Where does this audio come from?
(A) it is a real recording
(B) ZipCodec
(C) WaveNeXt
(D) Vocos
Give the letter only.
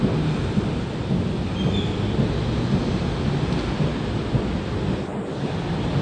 A